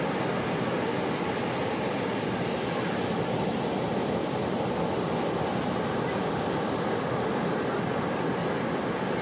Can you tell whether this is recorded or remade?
recorded